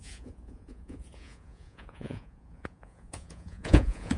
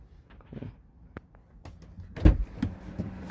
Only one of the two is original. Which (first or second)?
second